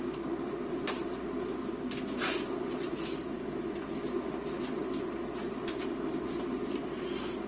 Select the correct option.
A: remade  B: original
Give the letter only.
B